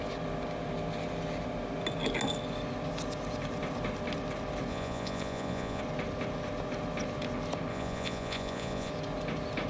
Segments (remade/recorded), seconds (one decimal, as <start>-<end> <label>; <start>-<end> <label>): 0.0-4.7 recorded; 4.7-5.8 remade; 5.8-7.7 recorded; 7.7-8.9 remade; 8.9-9.7 recorded